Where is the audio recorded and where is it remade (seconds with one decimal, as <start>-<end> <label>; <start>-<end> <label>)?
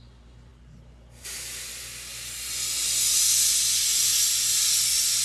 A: 0.0-5.2 recorded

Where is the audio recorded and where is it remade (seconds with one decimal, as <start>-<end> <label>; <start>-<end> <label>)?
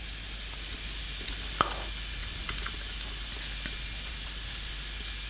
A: 0.0-5.3 recorded